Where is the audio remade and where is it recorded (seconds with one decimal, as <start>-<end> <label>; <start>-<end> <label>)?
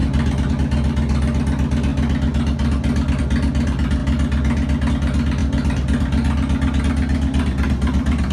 0.0-8.3 recorded